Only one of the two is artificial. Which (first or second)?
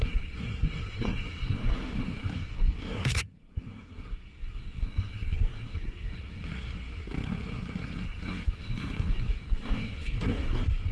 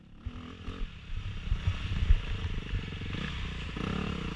first